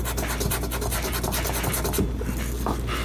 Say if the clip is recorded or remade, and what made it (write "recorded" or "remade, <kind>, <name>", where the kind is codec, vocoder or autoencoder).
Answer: recorded